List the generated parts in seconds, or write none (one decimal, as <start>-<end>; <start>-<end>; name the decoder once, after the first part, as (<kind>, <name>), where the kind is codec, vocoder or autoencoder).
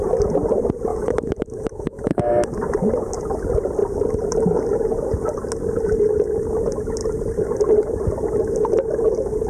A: 0.9-2.5 (autoencoder, DAC-VAE)